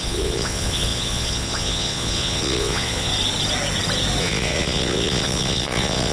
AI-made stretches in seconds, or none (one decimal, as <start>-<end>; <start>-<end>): 0.0-3.1; 4.2-6.1